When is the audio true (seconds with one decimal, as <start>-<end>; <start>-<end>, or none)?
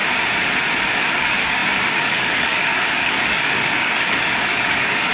0.0-1.1